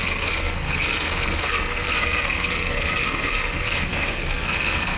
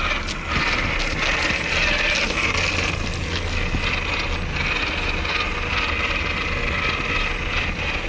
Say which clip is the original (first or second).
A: second